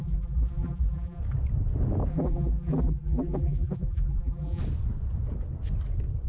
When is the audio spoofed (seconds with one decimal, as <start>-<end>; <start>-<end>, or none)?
0.0-1.2; 2.1-4.6